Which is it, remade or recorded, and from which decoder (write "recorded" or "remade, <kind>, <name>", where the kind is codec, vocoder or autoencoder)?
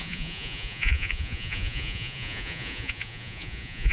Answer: remade, vocoder, Vocos